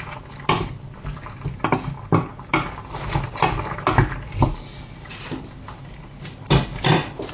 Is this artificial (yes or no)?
no